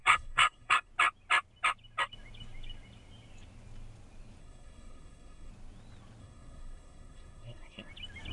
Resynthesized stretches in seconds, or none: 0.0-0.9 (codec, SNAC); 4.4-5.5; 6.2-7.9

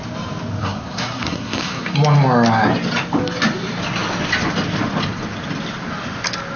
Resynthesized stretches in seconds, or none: 0.6-1.9 (codec, SNAC)